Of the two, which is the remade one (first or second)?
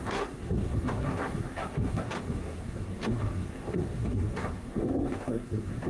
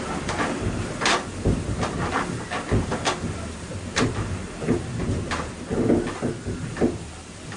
first